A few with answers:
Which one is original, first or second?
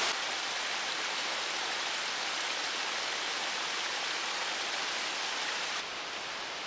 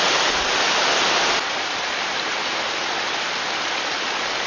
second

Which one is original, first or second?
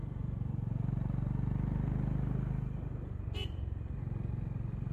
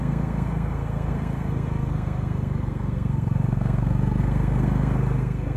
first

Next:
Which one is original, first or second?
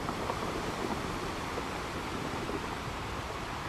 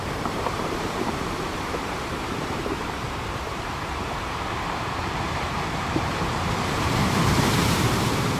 first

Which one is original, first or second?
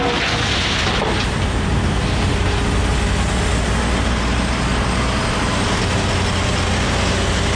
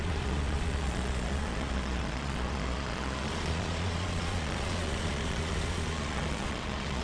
first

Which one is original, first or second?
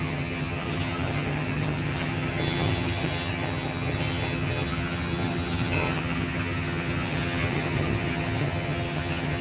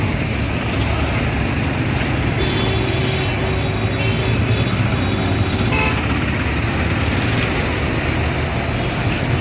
second